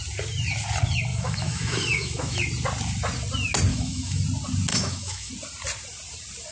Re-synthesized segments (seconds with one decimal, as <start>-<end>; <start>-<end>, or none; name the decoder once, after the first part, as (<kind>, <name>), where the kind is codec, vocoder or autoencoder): 1.1-2.4 (autoencoder, DAC-VAE); 3.7-4.2; 4.7-5.3